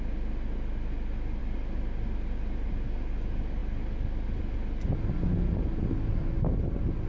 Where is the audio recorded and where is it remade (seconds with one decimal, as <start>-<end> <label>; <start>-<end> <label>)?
0.0-7.1 recorded